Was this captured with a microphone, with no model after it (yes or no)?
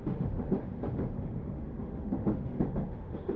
no